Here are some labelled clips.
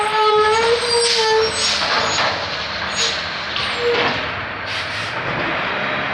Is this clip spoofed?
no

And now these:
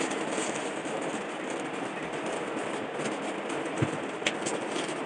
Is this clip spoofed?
no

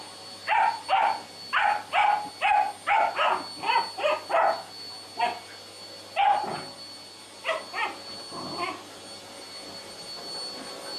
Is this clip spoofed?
no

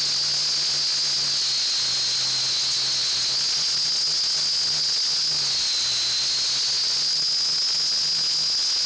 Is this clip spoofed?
no